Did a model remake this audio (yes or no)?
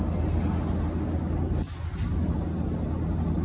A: no